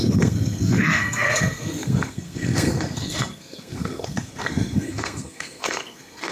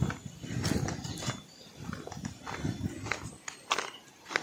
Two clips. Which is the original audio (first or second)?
second